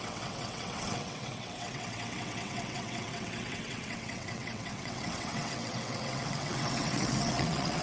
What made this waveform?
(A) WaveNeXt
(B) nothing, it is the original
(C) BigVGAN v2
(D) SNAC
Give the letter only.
A